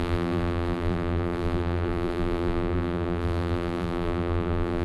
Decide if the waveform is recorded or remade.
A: remade